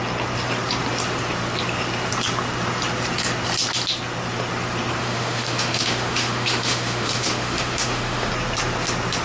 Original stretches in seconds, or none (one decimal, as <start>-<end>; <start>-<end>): 0.0-5.0; 8.3-9.2